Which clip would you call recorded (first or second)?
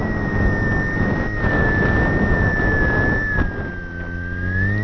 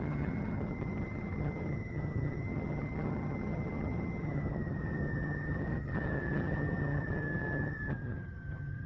first